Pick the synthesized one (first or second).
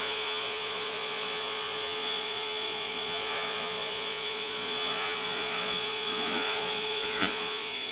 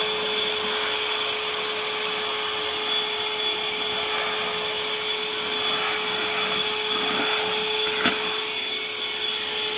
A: first